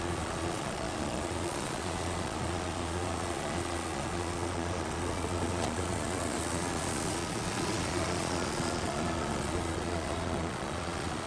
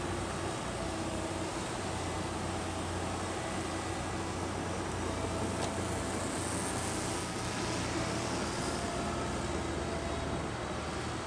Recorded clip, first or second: second